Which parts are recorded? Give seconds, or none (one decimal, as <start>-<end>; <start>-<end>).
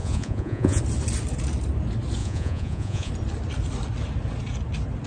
0.8-2.2; 3.1-5.1